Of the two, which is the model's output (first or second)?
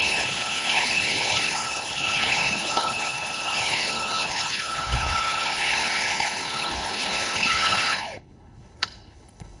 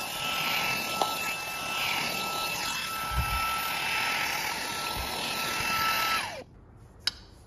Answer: first